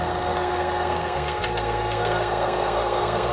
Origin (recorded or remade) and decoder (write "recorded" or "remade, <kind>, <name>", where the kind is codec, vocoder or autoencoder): remade, codec, SNAC